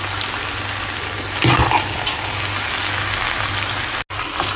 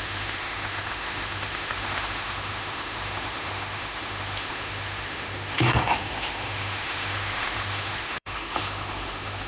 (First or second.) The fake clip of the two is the second